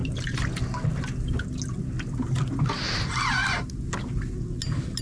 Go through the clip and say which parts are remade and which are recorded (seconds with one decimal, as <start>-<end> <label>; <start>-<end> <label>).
0.0-5.0 recorded